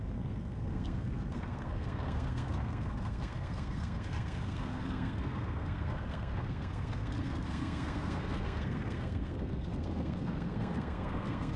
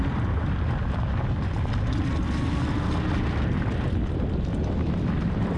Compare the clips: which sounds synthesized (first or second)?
first